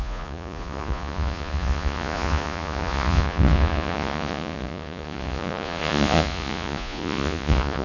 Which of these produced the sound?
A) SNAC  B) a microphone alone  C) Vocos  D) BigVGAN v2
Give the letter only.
C